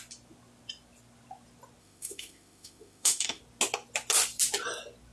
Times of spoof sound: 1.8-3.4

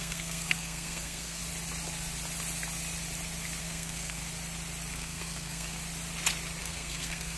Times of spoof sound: 0.0-1.4; 3.6-4.2; 4.9-5.8; 6.6-7.4